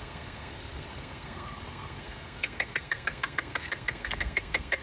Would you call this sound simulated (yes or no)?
yes